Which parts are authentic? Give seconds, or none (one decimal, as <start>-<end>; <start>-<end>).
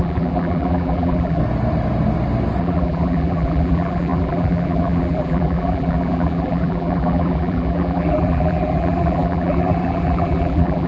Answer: 1.4-2.6